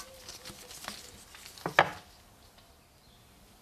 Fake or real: real